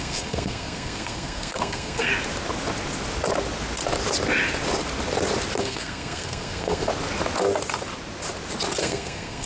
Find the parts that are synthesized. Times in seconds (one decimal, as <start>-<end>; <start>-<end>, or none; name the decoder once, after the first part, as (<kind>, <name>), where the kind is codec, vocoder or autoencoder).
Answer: 0.0-2.1 (codec, SNAC); 5.6-6.9; 8.8-9.5